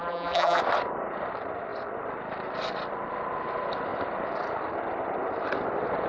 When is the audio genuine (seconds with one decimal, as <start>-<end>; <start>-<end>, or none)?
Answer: 0.6-6.1